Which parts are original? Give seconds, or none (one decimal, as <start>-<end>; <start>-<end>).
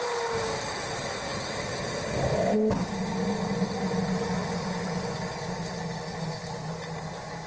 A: 0.0-7.5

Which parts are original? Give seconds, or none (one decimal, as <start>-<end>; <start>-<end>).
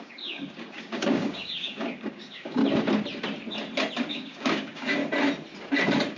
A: 2.6-4.1; 5.0-6.2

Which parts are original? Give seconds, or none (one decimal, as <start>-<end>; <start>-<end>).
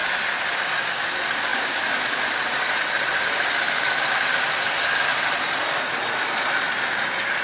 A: 0.0-7.4